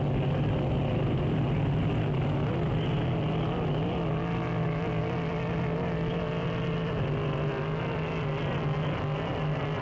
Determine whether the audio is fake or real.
real